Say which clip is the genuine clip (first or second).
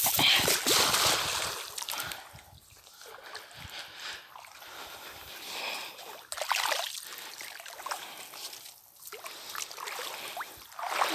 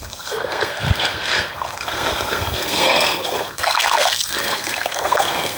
first